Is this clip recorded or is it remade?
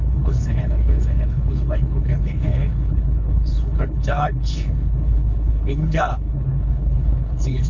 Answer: remade